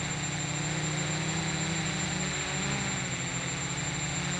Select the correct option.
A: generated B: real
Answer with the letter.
B